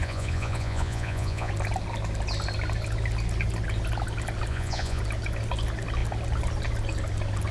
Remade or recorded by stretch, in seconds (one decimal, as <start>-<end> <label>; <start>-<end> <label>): 0.0-1.5 remade; 1.5-4.5 recorded; 4.5-5.0 remade; 5.0-7.5 recorded